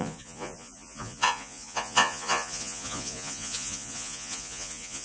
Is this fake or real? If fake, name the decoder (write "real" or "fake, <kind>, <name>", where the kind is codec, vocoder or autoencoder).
fake, vocoder, Vocos